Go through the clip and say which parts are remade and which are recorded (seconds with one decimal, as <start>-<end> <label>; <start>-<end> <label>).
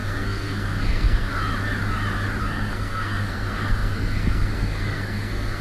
0.0-1.3 remade; 1.3-2.4 recorded; 2.4-5.6 remade